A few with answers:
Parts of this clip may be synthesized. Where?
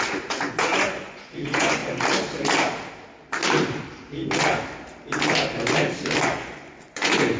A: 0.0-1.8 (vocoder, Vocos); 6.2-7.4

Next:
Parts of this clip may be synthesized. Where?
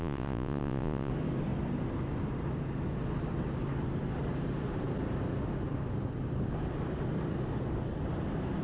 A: 0.0-1.1 (vocoder, Vocos)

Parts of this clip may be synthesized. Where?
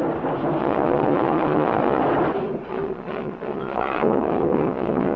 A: 0.6-2.0 (vocoder, Vocos); 2.7-5.2